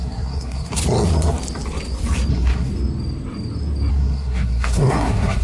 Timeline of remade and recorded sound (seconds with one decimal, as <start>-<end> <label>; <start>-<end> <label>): 0.0-0.8 remade; 0.8-2.3 recorded; 2.3-2.7 remade; 2.7-3.9 recorded; 3.9-5.4 remade